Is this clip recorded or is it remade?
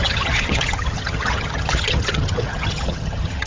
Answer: remade